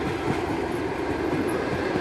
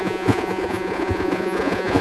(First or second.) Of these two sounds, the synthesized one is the second